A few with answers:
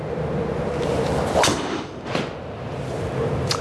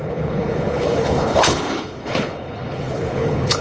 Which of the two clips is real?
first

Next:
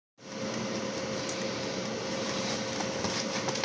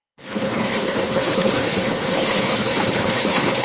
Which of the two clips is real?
first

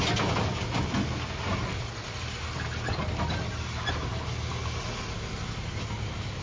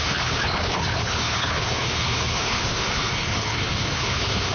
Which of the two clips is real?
first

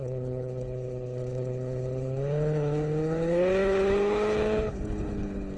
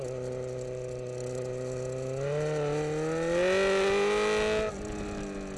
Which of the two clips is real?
second